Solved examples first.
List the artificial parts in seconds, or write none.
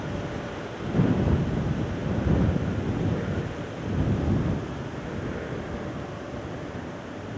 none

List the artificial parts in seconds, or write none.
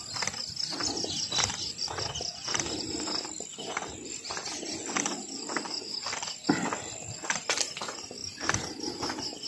none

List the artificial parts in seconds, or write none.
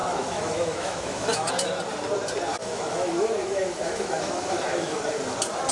0.0-1.5 (autoencoder, DAC-VAE); 2.6-5.0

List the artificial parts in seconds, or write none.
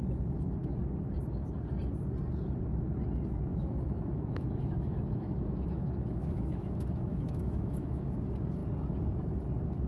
3.5-8.0 (autoencoder, DAC-VAE)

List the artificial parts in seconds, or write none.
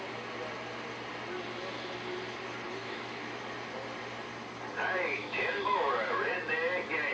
2.8-3.4 (autoencoder, DAC-VAE); 5.2-5.9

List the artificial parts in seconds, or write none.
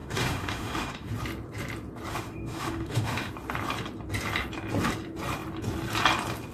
0.0-1.1 (autoencoder, DAC-VAE); 2.1-3.3